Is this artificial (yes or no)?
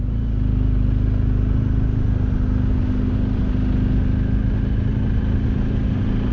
no